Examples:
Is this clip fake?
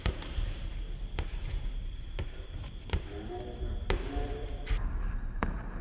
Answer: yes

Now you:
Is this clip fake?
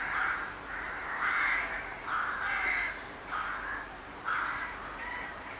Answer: yes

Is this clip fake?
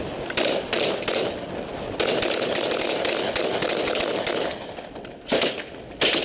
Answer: no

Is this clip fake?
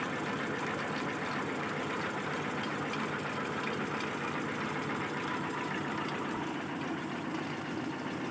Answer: no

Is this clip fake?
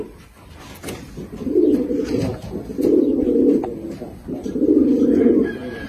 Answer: yes